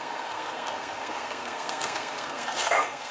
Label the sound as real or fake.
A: fake